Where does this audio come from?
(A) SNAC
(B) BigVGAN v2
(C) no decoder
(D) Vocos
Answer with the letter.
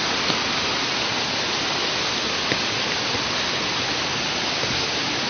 C